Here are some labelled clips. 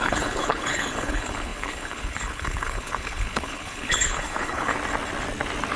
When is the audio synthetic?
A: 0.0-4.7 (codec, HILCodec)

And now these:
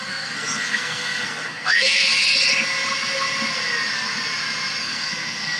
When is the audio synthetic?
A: 0.0-2.1 (codec, SNAC); 4.8-5.6

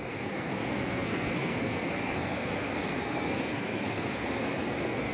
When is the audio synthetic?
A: 0.0-5.1 (codec, SNAC)